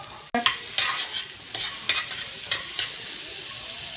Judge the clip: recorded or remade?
recorded